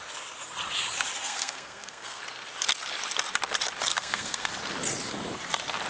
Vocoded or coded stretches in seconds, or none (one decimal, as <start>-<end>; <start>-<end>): 1.2-2.2; 3.9-4.5